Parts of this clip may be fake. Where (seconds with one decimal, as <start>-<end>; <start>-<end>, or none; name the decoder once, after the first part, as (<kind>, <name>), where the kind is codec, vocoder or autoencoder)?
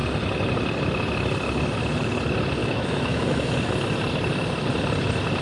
2.6-3.7 (autoencoder, DAC-VAE)